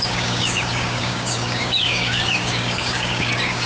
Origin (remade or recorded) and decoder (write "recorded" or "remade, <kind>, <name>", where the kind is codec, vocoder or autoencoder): remade, codec, DAC